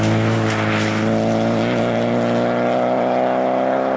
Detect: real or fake real